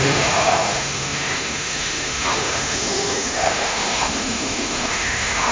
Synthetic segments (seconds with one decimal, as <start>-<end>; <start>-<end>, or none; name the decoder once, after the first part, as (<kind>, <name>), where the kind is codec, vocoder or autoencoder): 0.0-5.5 (autoencoder, DAC-VAE)